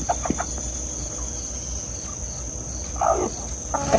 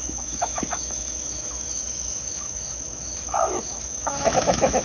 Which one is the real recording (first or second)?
first